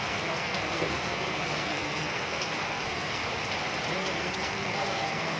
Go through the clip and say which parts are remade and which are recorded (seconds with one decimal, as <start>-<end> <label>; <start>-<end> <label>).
0.0-3.2 remade; 3.2-4.0 recorded; 4.0-5.4 remade